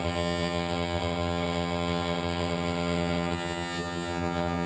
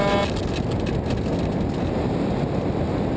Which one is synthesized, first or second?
first